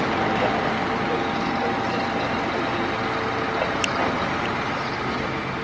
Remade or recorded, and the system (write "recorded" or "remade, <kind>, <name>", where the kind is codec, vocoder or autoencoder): recorded